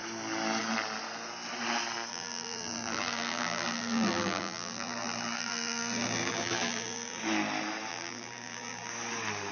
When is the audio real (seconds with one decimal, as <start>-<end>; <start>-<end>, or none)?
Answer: 0.0-2.1; 7.2-7.9; 8.9-9.5